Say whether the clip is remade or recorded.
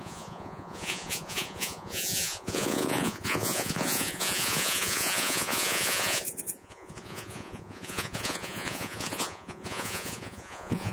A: remade